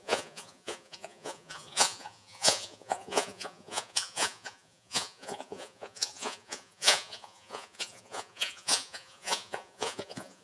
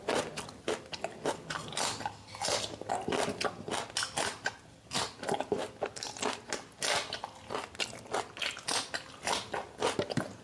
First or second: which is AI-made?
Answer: first